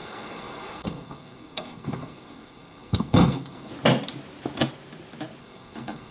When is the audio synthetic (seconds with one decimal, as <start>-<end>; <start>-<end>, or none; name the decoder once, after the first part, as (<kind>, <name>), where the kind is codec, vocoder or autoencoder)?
0.0-3.7 (codec, SNAC); 5.4-6.1